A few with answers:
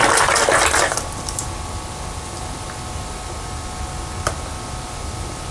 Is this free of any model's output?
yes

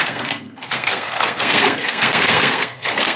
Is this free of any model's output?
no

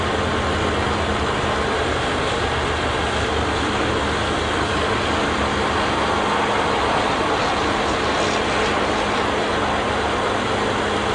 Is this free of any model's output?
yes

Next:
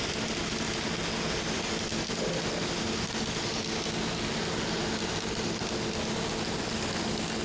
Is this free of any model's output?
yes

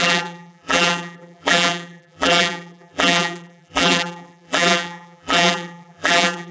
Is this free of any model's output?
no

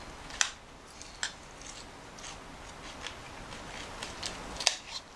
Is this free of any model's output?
yes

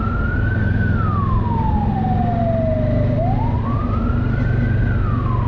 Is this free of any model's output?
yes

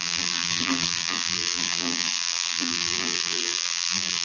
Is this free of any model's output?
no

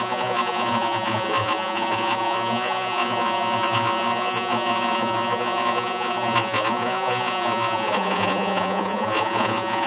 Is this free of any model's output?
no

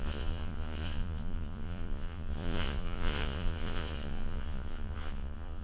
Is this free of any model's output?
no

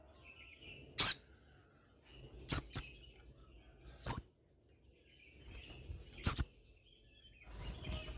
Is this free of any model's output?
yes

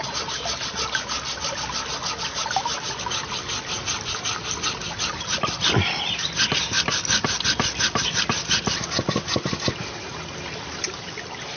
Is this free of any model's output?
yes